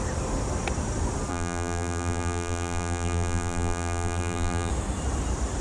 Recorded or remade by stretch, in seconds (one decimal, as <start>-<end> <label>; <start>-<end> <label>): 0.0-1.3 recorded; 1.3-4.7 remade; 4.7-5.6 recorded